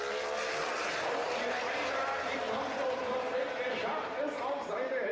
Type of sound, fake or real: fake